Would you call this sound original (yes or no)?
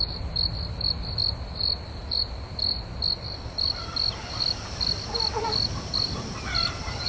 yes